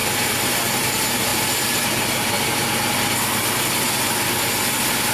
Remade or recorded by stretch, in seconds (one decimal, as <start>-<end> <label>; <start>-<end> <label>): 0.0-5.1 recorded